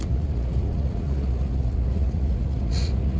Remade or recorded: remade